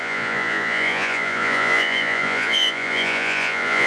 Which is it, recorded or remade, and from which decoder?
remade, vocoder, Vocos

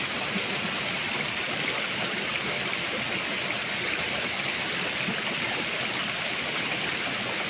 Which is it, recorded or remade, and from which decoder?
recorded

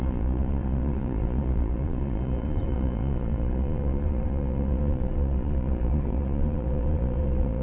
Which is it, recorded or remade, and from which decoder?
remade, vocoder, Vocos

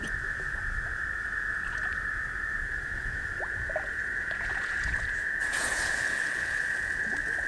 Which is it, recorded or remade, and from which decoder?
remade, vocoder, Vocos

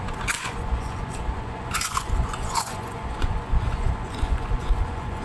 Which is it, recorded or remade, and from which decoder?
remade, vocoder, Vocos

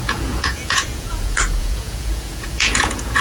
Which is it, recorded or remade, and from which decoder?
remade, vocoder, Vocos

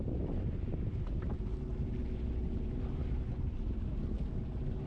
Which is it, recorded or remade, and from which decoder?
recorded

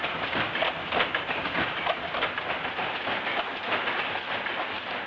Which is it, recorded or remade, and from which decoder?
recorded